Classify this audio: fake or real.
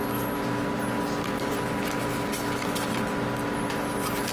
real